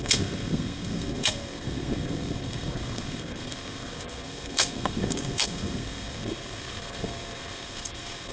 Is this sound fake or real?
fake